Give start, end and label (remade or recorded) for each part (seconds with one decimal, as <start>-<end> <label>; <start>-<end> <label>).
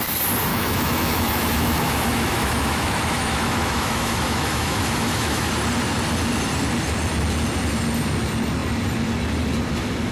0.0-0.5 recorded; 0.5-5.5 remade; 5.5-10.1 recorded